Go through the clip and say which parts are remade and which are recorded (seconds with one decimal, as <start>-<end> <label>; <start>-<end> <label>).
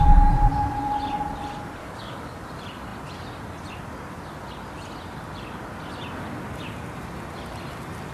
0.0-1.8 recorded; 1.8-2.4 remade; 2.4-8.1 recorded